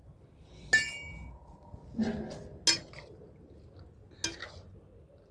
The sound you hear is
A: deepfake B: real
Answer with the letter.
B